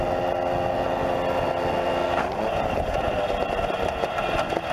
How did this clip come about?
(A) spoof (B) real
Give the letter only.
B